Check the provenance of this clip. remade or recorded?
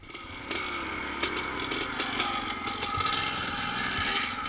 recorded